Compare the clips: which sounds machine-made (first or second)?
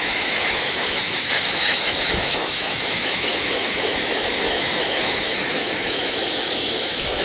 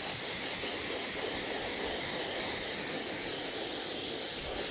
first